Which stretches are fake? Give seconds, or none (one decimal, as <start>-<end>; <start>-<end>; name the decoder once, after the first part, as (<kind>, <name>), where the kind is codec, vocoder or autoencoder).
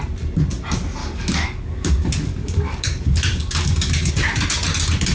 1.0-4.1 (codec, DAC)